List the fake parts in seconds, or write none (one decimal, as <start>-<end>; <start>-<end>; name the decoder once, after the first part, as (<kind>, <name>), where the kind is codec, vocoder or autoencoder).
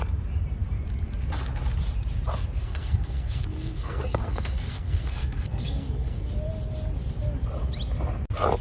2.6-6.3 (codec, SNAC)